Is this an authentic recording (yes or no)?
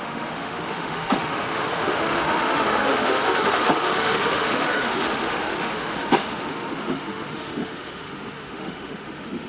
no